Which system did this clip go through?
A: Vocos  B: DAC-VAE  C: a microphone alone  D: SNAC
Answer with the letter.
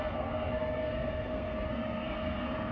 D